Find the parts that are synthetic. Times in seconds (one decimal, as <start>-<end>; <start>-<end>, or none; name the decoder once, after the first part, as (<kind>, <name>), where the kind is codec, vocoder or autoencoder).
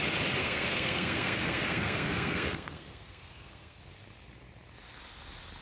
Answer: 0.4-3.8 (codec, SNAC)